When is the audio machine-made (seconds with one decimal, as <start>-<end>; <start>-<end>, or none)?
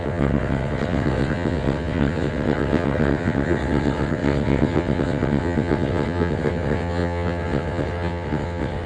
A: 0.0-8.9